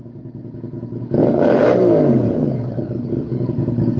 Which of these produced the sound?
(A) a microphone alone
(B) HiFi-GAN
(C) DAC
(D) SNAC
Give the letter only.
C